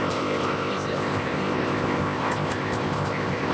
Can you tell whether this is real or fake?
fake